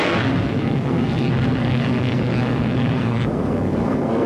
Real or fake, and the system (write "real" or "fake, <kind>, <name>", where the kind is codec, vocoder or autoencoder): fake, codec, SNAC